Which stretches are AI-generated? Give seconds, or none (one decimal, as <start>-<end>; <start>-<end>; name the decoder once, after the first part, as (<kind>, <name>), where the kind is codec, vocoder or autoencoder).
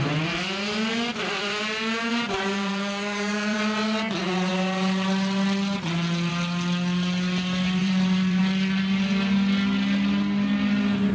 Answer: 2.1-3.6 (vocoder, BigVGAN v2); 7.8-8.4